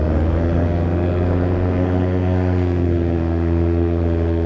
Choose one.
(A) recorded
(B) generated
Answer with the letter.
B